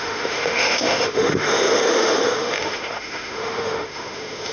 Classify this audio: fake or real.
fake